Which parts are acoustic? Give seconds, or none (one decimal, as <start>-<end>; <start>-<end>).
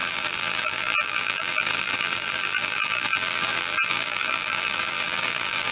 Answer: none